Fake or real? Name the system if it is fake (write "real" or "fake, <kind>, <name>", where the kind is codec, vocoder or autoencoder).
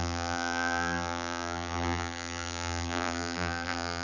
fake, vocoder, BigVGAN v2